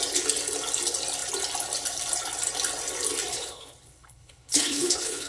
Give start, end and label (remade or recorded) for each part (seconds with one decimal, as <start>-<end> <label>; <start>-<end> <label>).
0.0-3.3 recorded; 3.3-5.3 remade